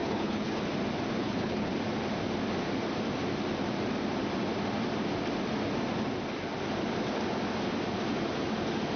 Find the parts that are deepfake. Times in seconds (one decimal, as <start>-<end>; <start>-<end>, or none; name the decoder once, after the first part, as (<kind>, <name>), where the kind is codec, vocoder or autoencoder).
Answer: 0.0-0.6 (codec, HILCodec); 1.2-1.7